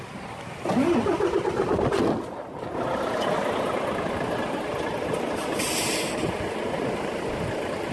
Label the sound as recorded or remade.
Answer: recorded